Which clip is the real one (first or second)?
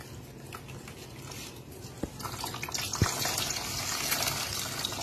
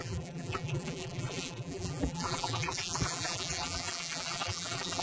first